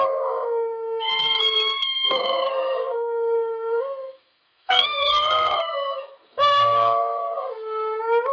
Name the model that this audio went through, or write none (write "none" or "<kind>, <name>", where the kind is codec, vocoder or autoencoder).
codec, SNAC